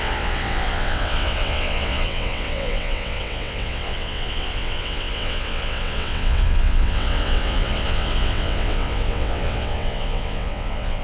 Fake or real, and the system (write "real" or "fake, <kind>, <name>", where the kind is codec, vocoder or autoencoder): fake, vocoder, WaveNeXt